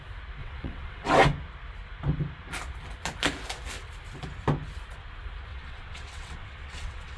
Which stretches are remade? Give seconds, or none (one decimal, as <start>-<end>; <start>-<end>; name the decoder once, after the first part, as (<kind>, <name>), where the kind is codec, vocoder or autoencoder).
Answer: 0.4-1.1 (vocoder, WaveNeXt); 5.5-7.2